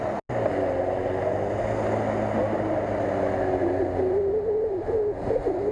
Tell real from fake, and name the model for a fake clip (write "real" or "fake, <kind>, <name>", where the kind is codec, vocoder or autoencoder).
real